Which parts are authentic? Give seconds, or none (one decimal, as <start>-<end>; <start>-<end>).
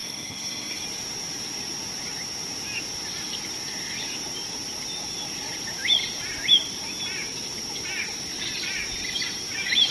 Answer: 0.8-9.9